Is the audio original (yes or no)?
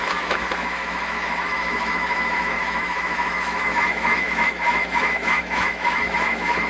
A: no